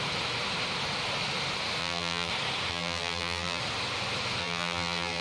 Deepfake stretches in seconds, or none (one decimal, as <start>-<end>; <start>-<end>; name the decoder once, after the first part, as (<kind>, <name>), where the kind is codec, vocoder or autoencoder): 1.8-2.3 (vocoder, BigVGAN v2); 2.7-3.6; 4.4-5.2